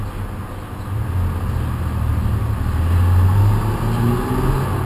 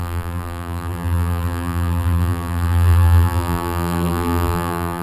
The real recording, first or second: first